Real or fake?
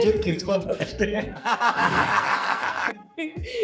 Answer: fake